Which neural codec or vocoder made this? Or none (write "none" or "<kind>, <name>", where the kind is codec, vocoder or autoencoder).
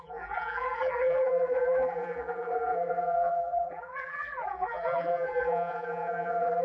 vocoder, BigVGAN v2